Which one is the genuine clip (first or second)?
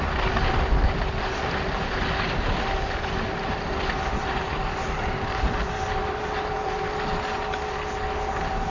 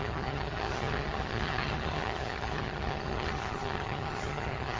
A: first